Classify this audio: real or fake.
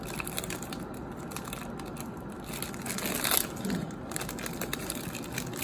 real